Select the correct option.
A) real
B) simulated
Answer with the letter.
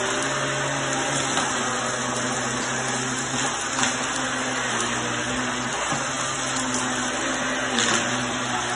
A